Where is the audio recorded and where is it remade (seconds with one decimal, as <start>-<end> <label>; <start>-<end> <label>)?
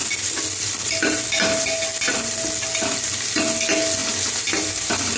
0.0-5.2 recorded